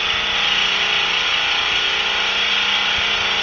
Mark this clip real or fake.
real